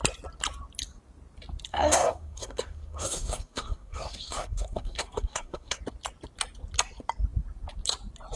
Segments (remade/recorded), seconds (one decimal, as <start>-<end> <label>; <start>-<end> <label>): 0.0-1.7 recorded; 1.7-5.8 remade; 5.8-8.4 recorded